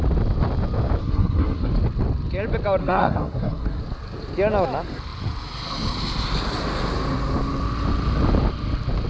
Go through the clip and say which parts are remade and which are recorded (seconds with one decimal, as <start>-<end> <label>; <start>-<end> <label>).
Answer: 0.0-1.0 recorded; 1.0-1.7 remade; 1.7-2.8 recorded; 2.8-3.8 remade; 3.8-9.1 recorded